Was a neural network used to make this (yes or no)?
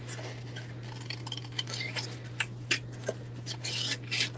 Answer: no